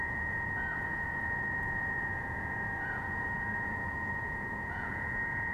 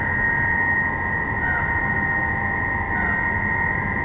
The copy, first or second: first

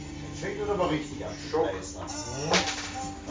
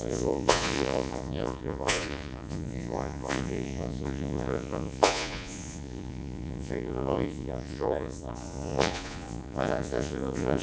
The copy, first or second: second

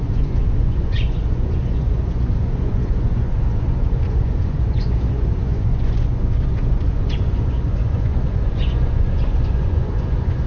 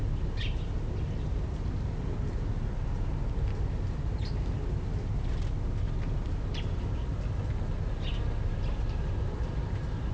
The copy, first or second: first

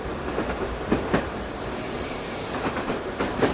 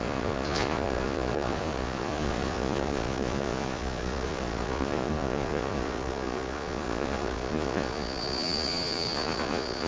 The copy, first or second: second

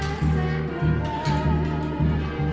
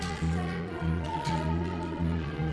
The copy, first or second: second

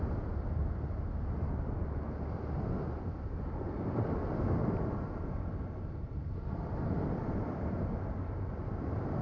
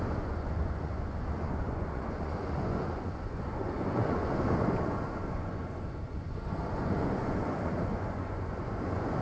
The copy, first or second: second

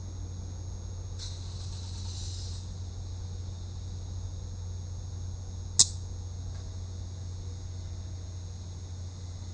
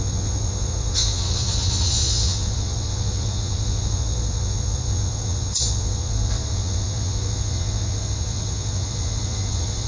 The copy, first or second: second